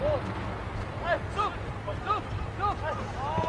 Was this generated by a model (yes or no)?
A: no